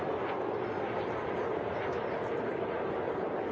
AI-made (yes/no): no